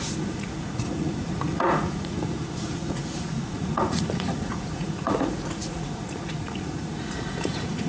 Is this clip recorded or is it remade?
remade